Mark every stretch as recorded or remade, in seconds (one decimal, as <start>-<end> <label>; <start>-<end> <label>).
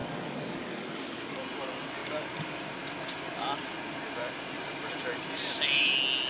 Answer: 0.0-1.4 remade; 1.4-6.3 recorded